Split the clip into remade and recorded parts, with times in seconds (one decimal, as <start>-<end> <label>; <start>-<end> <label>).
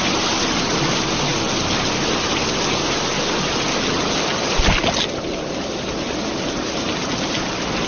0.0-7.9 recorded